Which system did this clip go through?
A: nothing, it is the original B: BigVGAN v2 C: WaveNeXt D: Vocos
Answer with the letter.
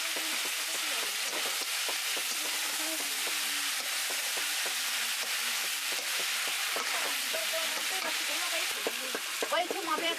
B